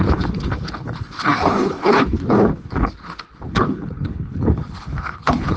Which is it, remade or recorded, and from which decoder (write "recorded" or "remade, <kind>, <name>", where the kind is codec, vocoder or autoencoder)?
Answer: remade, codec, HILCodec